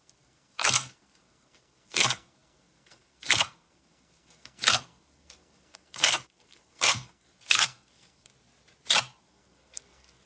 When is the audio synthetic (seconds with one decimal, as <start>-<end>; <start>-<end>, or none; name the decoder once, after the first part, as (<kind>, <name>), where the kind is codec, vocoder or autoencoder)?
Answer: 0.0-8.3 (codec, SNAC); 9.2-10.3